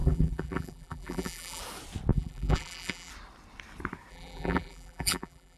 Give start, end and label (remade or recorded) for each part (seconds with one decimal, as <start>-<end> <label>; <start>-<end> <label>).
0.0-1.6 remade; 1.6-2.1 recorded; 2.1-3.1 remade; 3.1-4.1 recorded; 4.1-5.6 remade